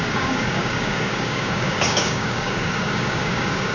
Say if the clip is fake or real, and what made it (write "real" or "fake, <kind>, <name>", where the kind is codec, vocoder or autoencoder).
fake, codec, DAC